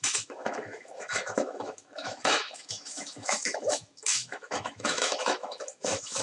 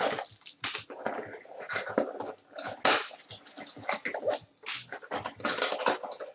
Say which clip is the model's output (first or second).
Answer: first